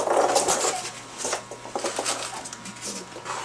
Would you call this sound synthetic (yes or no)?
no